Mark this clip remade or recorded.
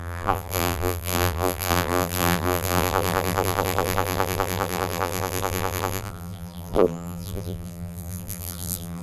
remade